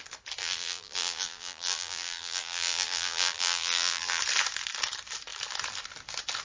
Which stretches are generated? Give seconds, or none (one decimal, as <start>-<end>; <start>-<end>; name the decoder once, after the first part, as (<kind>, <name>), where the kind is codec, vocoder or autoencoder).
0.4-4.2 (vocoder, BigVGAN v2)